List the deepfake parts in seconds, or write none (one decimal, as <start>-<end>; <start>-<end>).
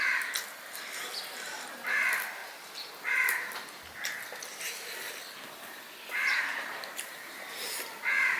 2.4-3.0; 6.4-8.0